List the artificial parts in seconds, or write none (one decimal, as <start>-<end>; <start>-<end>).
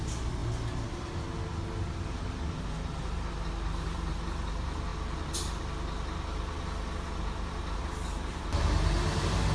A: none